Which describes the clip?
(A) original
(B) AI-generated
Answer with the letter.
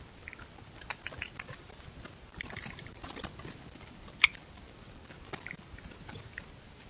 A